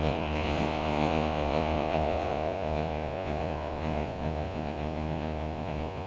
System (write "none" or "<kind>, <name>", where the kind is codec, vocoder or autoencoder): vocoder, Vocos